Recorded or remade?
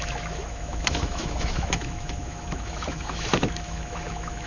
remade